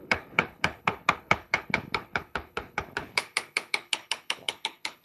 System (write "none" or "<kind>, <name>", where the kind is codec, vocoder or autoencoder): codec, HILCodec